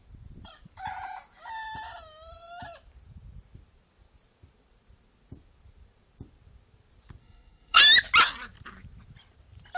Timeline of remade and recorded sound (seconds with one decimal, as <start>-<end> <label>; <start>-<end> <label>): 0.0-7.2 recorded; 7.2-7.8 remade; 7.8-9.8 recorded